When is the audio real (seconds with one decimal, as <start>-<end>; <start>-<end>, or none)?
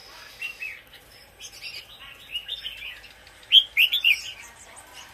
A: 0.0-5.1